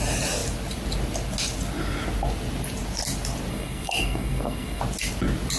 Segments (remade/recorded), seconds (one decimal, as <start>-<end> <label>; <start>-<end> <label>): 0.0-3.5 recorded; 3.5-4.8 remade; 4.8-5.6 recorded